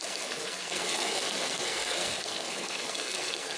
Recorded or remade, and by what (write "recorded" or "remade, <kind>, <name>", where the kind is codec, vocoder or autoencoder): remade, codec, SNAC